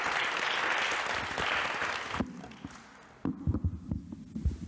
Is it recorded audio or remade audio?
recorded